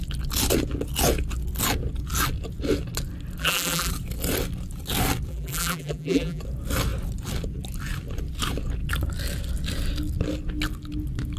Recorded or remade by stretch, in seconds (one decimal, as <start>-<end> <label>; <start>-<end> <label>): 0.0-3.4 recorded; 3.4-3.9 remade; 3.9-5.3 recorded; 5.3-6.4 remade; 6.4-11.4 recorded